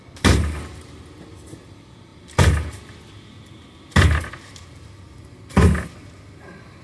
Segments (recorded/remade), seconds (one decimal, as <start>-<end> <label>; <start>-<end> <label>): 0.0-6.8 recorded